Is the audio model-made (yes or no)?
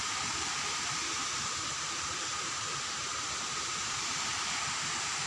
yes